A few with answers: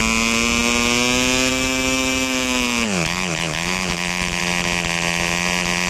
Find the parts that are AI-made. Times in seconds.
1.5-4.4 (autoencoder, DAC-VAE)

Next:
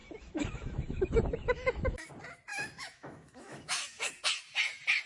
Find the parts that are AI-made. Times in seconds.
0.0-2.1 (autoencoder, DAC-VAE); 2.5-4.1

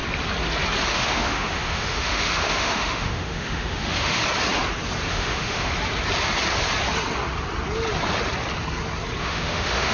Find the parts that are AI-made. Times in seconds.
0.9-4.2 (autoencoder, DAC-VAE); 5.1-5.7; 9.2-9.9

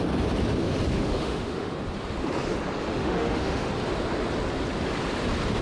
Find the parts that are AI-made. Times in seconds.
0.9-1.7 (autoencoder, DAC-VAE); 3.0-3.7